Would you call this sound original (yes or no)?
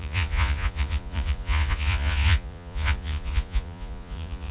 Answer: no